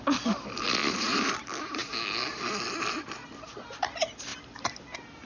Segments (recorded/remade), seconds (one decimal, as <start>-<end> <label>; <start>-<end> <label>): 0.0-0.8 recorded; 0.8-1.4 remade; 1.4-4.3 recorded; 4.3-4.8 remade; 4.8-5.3 recorded